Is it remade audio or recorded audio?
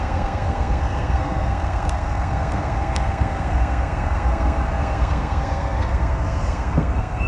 remade